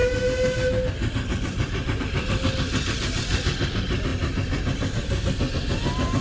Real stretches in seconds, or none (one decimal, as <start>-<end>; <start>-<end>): 0.0-6.2